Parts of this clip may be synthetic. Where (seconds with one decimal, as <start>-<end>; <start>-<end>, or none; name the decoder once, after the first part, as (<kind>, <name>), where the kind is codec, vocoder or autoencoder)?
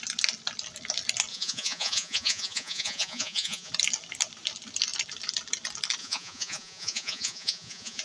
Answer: 1.3-3.7 (vocoder, Vocos); 6.0-8.0